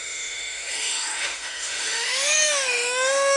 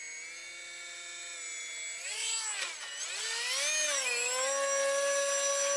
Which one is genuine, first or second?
second